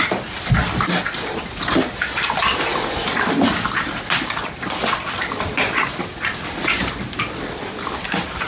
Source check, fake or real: real